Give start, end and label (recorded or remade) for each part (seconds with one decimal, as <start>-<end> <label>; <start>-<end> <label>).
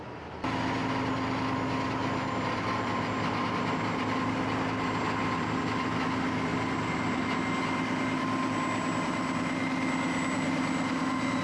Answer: 0.0-11.4 recorded